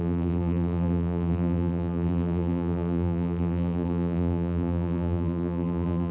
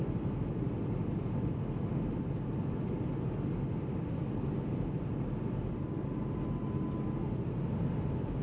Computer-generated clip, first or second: first